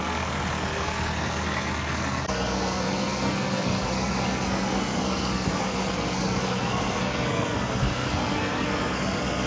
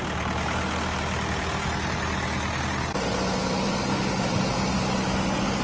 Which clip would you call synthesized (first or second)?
first